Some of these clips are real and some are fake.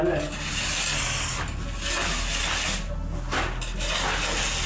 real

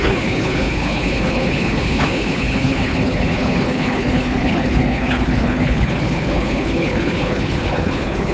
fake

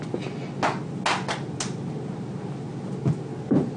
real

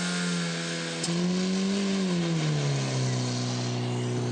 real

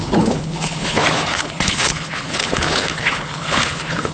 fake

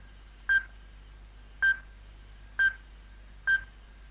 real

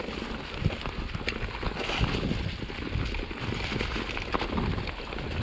real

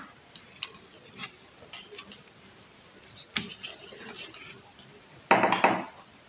real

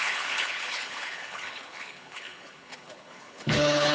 fake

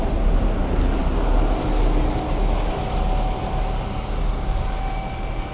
real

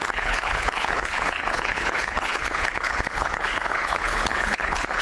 fake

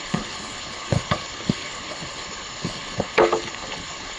fake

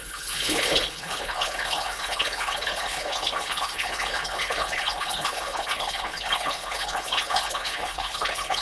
fake